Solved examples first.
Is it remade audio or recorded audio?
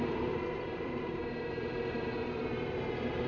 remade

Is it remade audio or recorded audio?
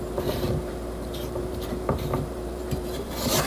remade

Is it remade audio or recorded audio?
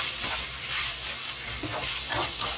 remade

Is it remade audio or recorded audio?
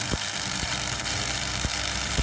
remade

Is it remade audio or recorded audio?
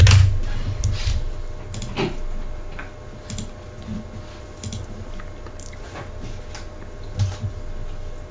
recorded